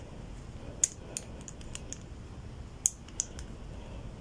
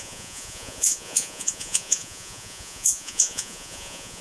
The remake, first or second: second